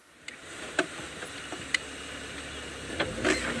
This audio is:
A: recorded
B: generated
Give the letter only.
A